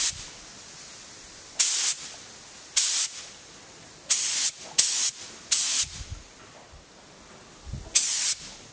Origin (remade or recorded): recorded